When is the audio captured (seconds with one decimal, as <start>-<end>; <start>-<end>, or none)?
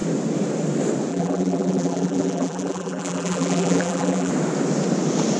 0.0-1.1; 4.3-5.4